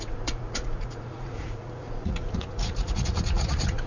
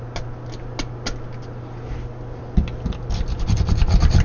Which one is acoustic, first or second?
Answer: second